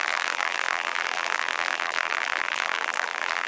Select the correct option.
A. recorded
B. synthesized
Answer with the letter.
B